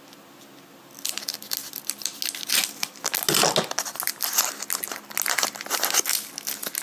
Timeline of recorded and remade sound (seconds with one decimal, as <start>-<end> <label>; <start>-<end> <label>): 0.0-6.8 recorded